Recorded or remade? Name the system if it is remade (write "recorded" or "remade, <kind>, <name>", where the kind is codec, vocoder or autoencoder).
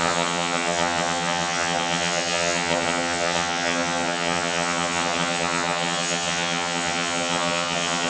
remade, vocoder, HiFi-GAN